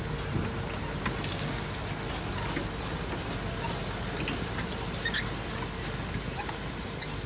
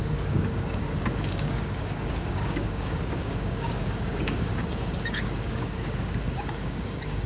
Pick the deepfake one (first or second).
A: second